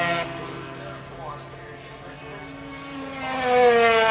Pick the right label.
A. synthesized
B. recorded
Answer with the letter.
B